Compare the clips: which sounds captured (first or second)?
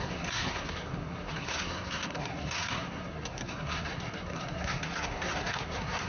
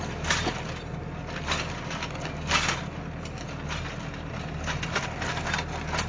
second